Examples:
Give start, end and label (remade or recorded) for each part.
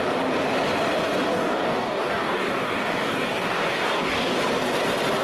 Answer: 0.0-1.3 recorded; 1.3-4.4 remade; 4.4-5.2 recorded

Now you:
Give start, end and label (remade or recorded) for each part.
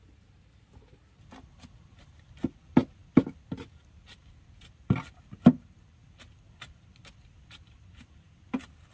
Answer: 0.0-8.9 recorded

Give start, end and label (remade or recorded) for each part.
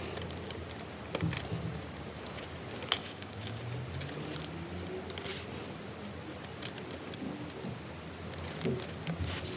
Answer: 0.0-3.0 recorded; 3.0-3.6 remade; 3.6-9.6 recorded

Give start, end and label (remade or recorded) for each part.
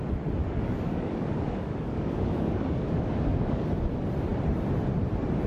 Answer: 0.0-0.4 recorded; 0.4-3.7 remade; 3.7-5.5 recorded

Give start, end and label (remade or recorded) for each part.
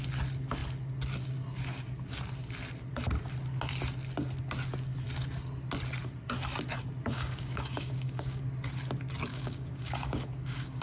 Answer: 0.0-7.1 recorded; 7.1-8.4 remade; 8.4-9.3 recorded; 9.3-10.8 remade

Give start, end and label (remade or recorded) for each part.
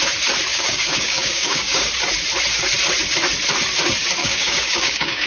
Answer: 0.0-0.5 recorded; 0.5-1.9 remade; 1.9-4.2 recorded; 4.2-5.3 remade